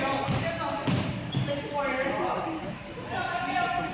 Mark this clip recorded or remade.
remade